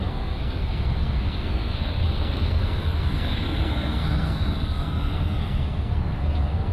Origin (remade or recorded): remade